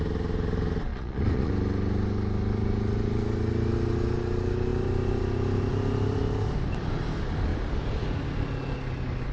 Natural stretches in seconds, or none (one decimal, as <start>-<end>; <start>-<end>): 0.0-0.9; 1.5-9.3